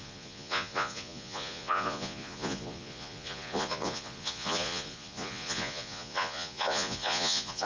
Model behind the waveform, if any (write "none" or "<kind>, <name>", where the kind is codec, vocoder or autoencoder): vocoder, Vocos